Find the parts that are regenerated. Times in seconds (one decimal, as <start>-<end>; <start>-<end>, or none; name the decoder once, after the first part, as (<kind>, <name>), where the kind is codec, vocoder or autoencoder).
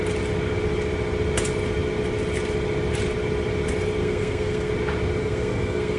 4.0-4.7 (codec, SNAC); 5.2-6.0